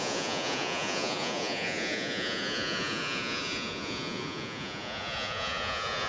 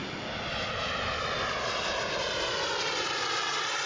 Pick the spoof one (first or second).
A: first